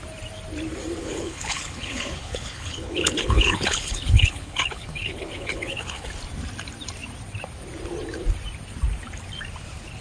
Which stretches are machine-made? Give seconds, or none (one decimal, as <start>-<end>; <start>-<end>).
1.0-6.1